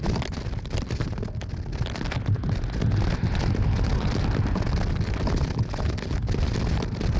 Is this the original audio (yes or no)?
yes